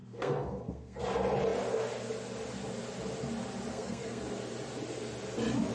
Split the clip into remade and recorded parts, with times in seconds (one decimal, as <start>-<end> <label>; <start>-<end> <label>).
0.0-1.0 remade; 1.0-3.7 recorded; 3.7-4.2 remade; 4.2-5.7 recorded